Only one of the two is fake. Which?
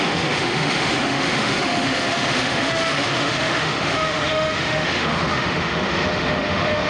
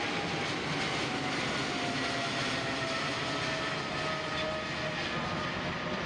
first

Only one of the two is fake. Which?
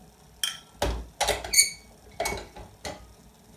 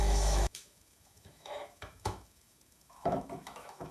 second